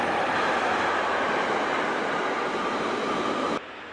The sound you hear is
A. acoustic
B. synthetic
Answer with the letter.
A